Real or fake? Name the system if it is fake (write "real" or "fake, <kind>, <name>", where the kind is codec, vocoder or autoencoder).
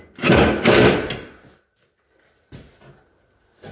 real